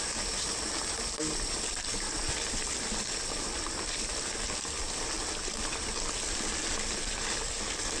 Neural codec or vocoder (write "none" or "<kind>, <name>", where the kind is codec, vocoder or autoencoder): none